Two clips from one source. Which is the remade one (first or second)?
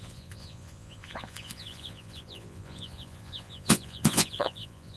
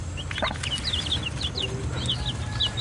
first